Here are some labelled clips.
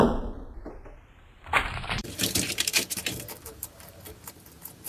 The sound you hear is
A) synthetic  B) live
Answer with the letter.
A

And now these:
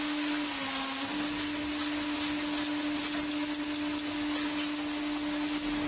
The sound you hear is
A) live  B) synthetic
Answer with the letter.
A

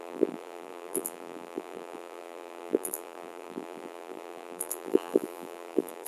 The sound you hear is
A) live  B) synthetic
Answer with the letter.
B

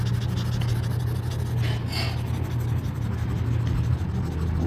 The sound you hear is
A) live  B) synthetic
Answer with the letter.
A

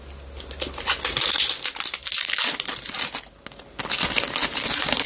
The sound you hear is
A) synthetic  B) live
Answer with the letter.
B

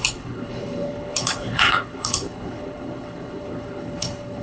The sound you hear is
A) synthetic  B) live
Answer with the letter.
A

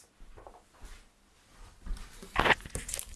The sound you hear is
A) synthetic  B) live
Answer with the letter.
B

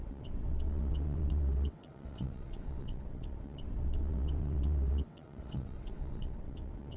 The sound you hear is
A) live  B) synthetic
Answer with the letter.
B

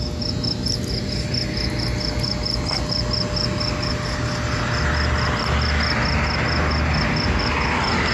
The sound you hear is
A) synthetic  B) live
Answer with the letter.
B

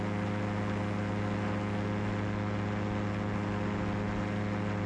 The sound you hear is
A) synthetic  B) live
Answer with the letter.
B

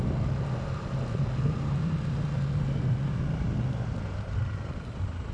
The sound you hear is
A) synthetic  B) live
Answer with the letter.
B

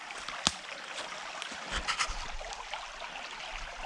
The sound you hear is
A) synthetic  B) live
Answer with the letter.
B